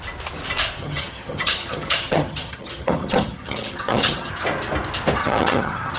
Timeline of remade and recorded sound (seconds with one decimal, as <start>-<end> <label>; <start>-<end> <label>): 0.0-0.8 recorded; 0.8-4.3 remade; 4.3-5.2 recorded; 5.2-6.0 remade